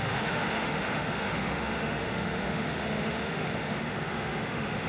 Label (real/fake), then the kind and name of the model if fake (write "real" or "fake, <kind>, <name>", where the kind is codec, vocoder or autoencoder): fake, autoencoder, DAC-VAE